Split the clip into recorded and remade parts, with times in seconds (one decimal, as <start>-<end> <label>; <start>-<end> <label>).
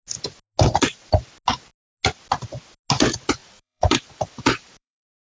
0.0-3.4 recorded; 3.4-5.3 remade